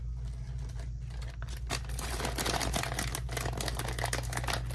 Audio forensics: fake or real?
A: real